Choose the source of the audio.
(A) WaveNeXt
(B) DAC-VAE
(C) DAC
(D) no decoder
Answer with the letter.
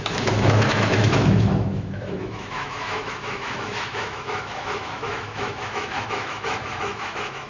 B